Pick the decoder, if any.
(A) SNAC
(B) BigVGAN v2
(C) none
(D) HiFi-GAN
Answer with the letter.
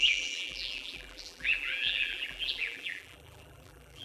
B